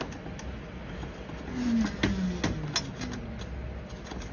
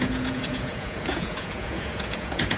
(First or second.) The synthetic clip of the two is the second